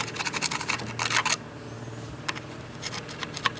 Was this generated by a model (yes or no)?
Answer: no